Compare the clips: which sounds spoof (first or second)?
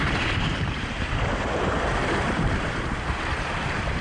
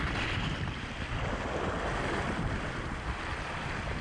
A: first